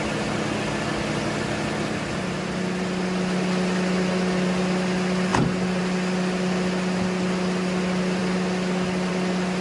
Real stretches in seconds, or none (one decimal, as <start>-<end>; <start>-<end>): 0.0-9.6